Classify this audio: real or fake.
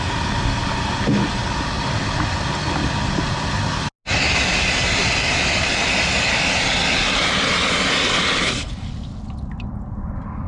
real